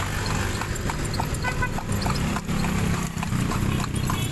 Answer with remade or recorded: recorded